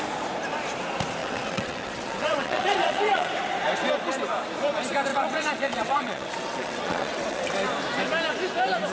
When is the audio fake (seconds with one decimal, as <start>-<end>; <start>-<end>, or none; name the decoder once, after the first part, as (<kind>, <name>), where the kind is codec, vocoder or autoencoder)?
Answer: 1.2-3.3 (vocoder, WaveNeXt); 5.1-7.4